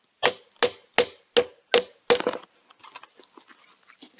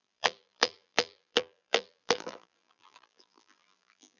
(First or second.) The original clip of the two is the first